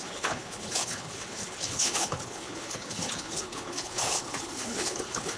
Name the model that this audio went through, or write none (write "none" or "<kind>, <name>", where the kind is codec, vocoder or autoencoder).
codec, HILCodec